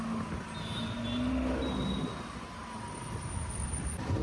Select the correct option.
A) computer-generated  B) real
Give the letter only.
B